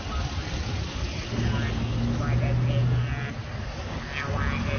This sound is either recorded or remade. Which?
recorded